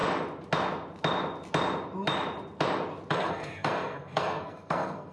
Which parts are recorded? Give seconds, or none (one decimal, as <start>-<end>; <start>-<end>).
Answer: 0.0-3.1